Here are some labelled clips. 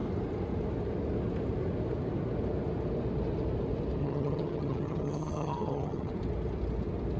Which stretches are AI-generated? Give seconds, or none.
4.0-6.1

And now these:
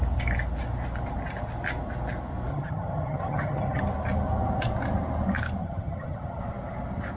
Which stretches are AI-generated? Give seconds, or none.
2.5-3.8; 5.6-6.4

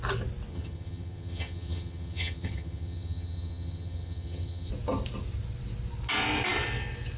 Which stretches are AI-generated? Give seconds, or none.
0.5-4.7